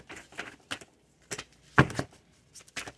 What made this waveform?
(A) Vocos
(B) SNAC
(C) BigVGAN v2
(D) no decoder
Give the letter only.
D